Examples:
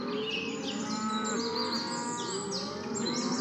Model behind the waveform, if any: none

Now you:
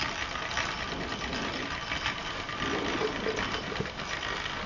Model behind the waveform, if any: none